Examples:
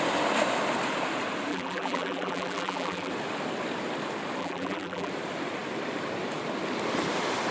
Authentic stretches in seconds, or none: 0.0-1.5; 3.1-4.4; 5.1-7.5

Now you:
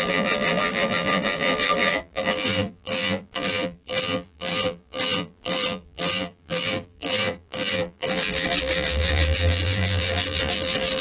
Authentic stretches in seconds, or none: none

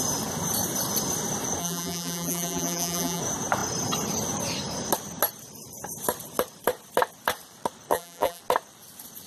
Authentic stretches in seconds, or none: 0.0-1.6; 3.2-7.9; 8.4-9.3

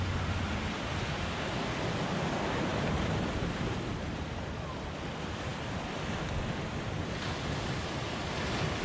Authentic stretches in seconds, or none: 0.0-2.7; 3.8-8.8

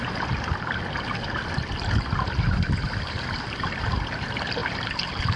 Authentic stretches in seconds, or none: 0.0-5.4

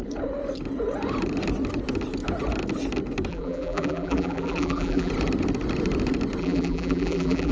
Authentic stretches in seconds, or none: 0.0-3.3; 5.1-6.4

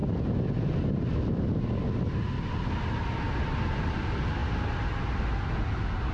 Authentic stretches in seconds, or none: 0.0-6.1